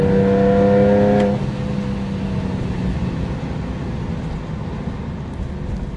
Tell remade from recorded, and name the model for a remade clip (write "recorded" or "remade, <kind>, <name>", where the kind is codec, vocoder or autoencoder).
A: recorded